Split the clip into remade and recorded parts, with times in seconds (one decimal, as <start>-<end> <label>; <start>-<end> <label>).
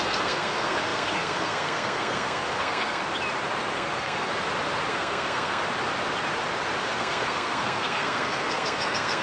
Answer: 0.0-3.0 remade; 3.0-3.7 recorded; 3.7-4.3 remade; 4.3-4.9 recorded; 4.9-5.6 remade; 5.6-6.8 recorded; 6.8-9.2 remade